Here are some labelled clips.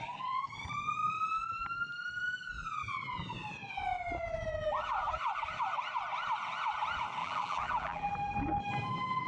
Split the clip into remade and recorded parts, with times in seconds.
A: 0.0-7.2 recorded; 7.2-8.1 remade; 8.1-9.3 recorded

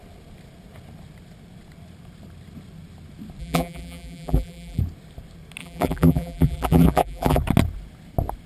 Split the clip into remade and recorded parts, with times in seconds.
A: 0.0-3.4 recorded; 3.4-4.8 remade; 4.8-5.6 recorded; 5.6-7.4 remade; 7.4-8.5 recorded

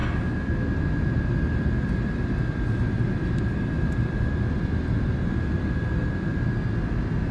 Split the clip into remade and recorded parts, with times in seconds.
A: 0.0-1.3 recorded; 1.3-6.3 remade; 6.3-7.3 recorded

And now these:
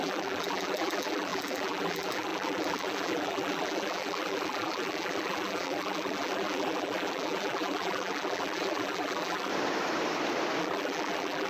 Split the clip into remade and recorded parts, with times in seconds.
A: 0.0-9.5 remade; 9.5-10.6 recorded; 10.6-11.5 remade

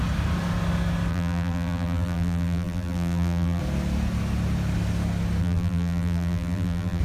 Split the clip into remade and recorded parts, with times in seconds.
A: 0.0-1.1 recorded; 1.1-3.6 remade; 3.6-5.4 recorded; 5.4-7.0 remade

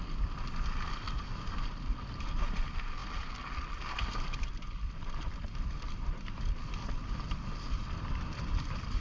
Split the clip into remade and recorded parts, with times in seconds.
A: 0.0-9.0 recorded

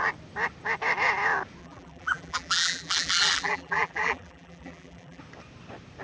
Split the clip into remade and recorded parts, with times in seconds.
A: 0.0-1.6 recorded; 1.6-5.2 remade; 5.2-6.0 recorded

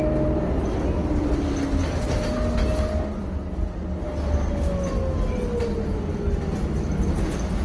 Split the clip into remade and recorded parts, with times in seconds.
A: 0.0-7.6 recorded